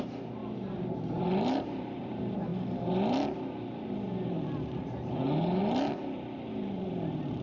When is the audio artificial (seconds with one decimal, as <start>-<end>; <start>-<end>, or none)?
0.0-2.5; 3.4-5.6; 6.5-7.4